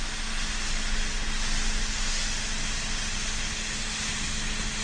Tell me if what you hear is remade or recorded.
recorded